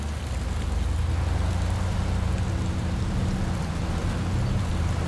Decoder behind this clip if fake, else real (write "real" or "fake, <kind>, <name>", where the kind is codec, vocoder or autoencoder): real